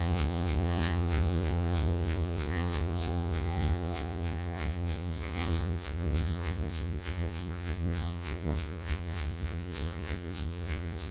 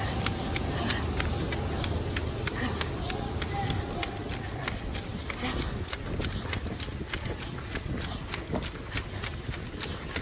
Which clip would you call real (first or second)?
second